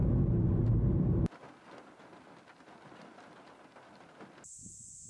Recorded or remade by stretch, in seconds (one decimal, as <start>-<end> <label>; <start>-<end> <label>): 0.0-5.1 recorded